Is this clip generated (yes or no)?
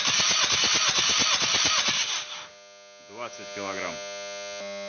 no